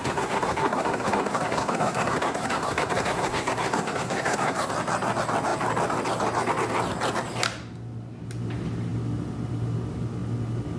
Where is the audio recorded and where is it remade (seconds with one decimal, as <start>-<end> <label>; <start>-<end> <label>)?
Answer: 0.0-4.7 remade; 4.7-10.8 recorded